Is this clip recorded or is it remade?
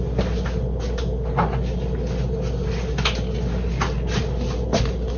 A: recorded